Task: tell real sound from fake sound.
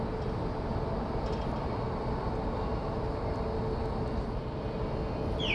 real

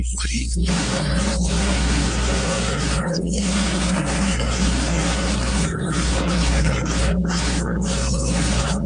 fake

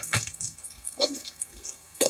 fake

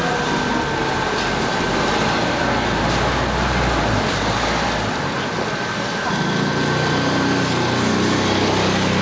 real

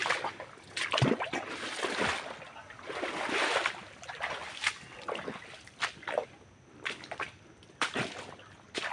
real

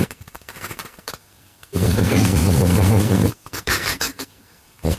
fake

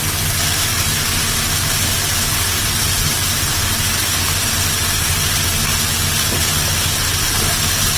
real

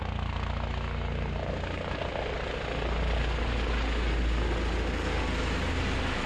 real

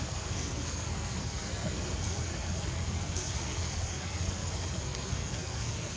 fake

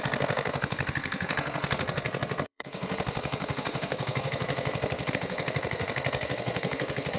fake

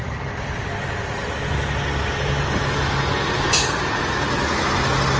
real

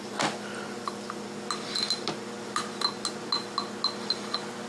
real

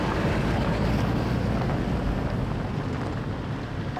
real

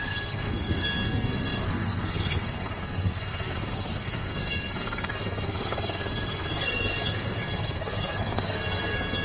fake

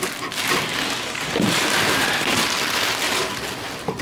real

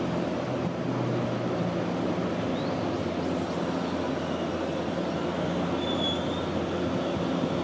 real